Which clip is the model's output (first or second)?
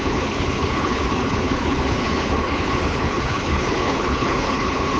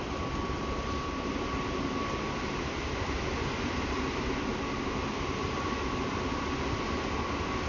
first